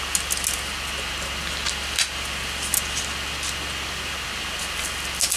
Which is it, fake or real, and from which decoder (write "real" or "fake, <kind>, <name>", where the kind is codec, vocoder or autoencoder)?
real